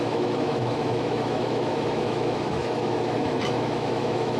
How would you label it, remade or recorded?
remade